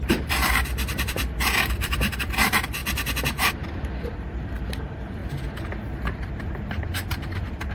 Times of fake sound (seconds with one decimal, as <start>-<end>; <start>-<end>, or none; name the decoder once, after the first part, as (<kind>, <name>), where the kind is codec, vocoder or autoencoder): 0.0-2.8 (vocoder, BigVGAN v2); 3.4-5.2; 6.1-7.7